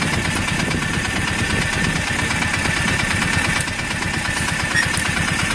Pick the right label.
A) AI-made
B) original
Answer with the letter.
B